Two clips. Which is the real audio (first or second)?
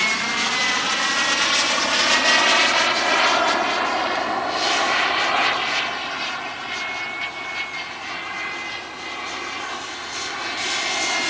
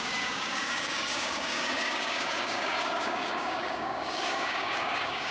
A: first